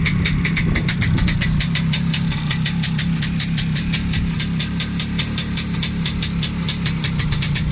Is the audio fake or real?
real